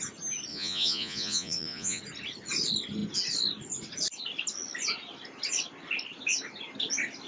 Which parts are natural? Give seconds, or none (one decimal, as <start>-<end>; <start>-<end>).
0.0-0.5; 2.0-7.3